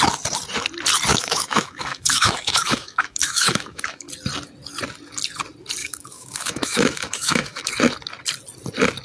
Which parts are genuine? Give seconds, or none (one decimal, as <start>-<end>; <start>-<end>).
0.0-1.1; 4.1-5.8; 7.7-9.0